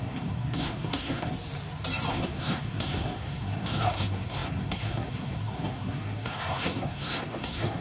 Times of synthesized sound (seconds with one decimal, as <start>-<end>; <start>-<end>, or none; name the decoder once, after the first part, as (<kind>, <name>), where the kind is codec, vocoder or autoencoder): 0.0-1.3 (codec, SNAC); 2.1-7.8